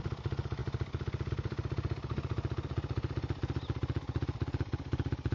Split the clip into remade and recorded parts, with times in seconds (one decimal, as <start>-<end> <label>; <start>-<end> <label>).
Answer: 0.0-5.3 recorded

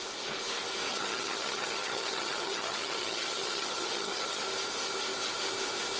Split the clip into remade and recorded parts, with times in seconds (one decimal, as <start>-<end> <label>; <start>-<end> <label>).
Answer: 0.0-0.9 recorded; 0.9-4.4 remade; 4.4-6.0 recorded

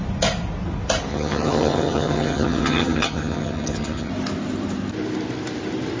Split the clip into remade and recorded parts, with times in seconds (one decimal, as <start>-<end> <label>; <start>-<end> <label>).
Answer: 0.0-1.1 recorded; 1.1-4.1 remade; 4.1-6.0 recorded

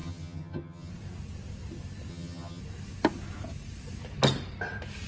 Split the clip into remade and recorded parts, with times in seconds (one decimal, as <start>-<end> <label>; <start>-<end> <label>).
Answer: 0.0-0.9 remade; 0.9-2.1 recorded; 2.1-2.6 remade; 2.6-5.1 recorded

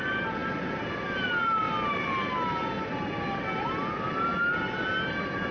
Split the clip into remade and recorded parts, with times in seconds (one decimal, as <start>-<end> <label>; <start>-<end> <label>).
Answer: 0.0-5.5 recorded

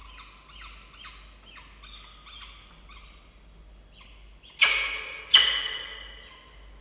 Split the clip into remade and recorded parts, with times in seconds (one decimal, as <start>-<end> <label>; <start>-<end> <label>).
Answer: 0.0-6.8 recorded